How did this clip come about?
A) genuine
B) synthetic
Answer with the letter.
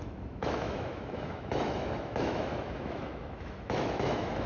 B